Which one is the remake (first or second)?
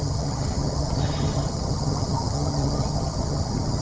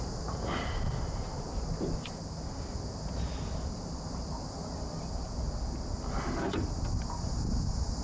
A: first